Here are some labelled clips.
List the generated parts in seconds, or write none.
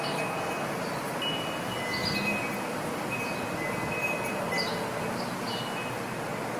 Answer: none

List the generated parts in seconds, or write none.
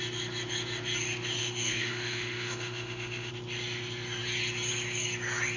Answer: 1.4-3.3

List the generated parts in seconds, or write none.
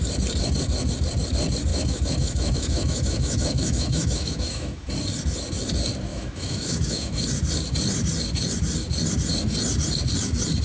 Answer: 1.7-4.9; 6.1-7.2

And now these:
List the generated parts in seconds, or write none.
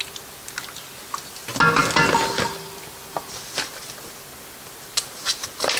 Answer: none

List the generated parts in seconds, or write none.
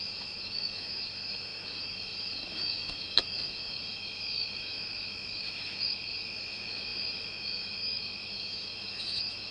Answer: 0.0-9.5